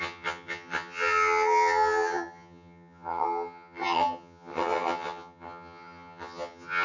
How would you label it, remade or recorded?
remade